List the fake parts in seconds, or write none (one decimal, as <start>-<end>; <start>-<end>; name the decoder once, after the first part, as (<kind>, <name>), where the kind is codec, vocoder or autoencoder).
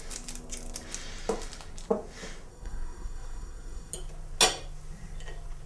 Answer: 2.5-3.9 (codec, SNAC)